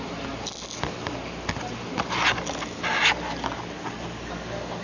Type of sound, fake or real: real